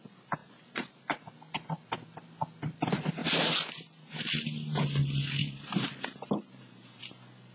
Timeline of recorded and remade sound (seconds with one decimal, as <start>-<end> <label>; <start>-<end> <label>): 0.0-0.4 recorded; 0.4-1.3 remade; 1.3-5.4 recorded; 5.4-7.0 remade; 7.0-7.5 recorded